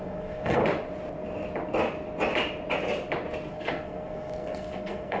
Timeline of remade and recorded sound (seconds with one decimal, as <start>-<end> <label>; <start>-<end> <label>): 0.0-0.6 remade; 0.6-3.5 recorded; 3.5-5.2 remade